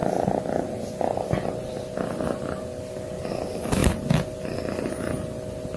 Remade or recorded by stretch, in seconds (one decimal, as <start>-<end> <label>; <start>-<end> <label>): 0.0-5.8 recorded